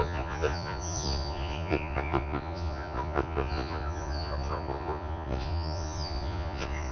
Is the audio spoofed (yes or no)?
yes